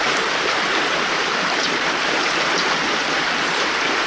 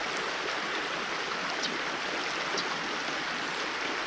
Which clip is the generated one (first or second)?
first